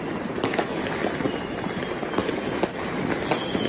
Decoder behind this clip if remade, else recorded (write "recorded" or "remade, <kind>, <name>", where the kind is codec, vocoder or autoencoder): recorded